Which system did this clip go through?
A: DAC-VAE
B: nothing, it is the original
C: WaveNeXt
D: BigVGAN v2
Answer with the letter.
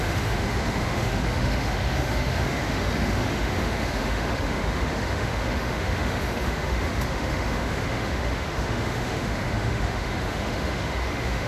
A